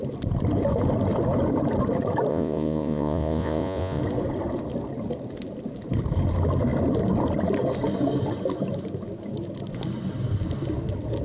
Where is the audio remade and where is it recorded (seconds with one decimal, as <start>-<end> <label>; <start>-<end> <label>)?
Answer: 0.0-2.3 recorded; 2.3-4.0 remade; 4.0-11.2 recorded